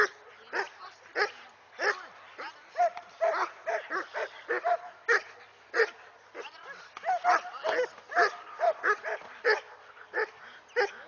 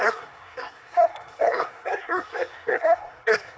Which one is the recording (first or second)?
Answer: first